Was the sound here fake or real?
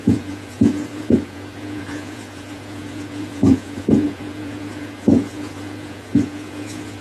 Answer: fake